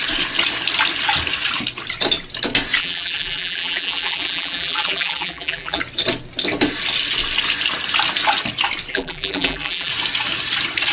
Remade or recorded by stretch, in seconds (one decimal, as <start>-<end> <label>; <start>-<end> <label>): 0.0-2.8 recorded; 2.8-5.8 remade; 5.8-8.9 recorded; 8.9-9.9 remade; 9.9-10.9 recorded